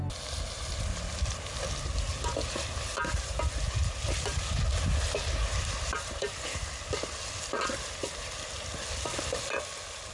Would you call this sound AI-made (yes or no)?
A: no